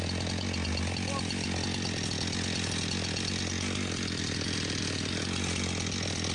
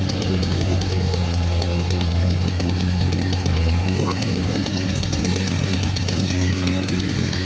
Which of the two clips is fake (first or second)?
second